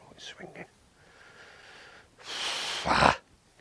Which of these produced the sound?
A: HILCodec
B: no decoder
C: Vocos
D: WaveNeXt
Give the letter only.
B